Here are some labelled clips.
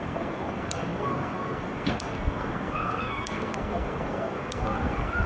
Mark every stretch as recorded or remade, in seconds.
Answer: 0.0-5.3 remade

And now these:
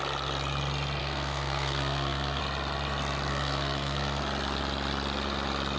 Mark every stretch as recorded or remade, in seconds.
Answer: 0.0-1.0 recorded; 1.0-2.4 remade; 2.4-3.3 recorded; 3.3-4.2 remade; 4.2-5.8 recorded

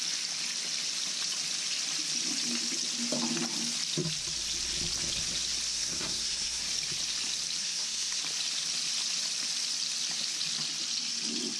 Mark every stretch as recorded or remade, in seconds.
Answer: 0.0-5.7 recorded; 5.7-6.6 remade; 6.6-7.6 recorded; 7.6-8.2 remade; 8.2-11.6 recorded